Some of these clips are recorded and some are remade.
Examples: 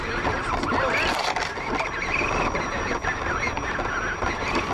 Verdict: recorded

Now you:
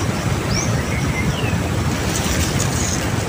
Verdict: recorded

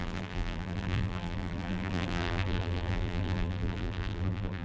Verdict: remade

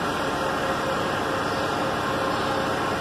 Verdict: recorded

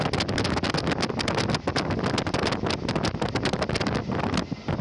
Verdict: recorded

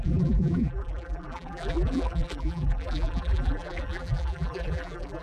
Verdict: remade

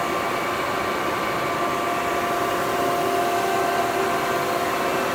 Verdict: recorded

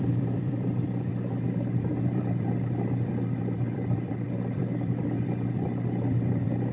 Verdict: remade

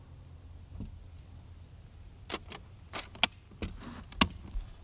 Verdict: recorded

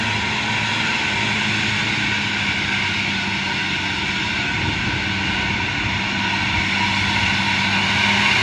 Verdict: recorded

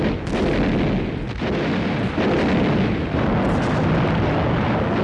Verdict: recorded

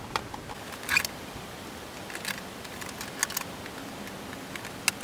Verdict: recorded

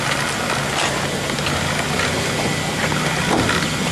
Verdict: recorded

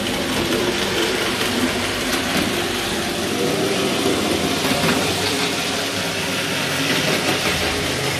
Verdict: remade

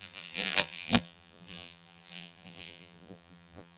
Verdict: remade